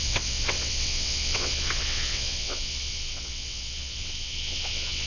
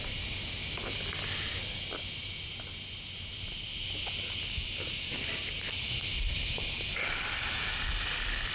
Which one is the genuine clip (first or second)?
second